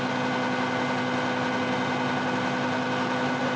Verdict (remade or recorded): recorded